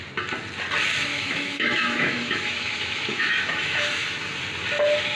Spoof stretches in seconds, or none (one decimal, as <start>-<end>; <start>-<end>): 1.1-4.2